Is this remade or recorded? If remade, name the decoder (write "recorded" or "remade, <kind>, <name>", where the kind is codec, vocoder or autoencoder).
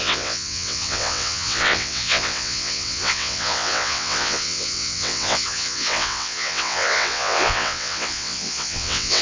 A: remade, vocoder, WaveNeXt